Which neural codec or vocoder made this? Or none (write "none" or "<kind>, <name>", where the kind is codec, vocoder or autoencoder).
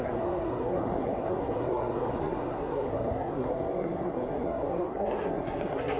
codec, SNAC